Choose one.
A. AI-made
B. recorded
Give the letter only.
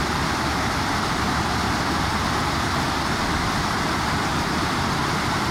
B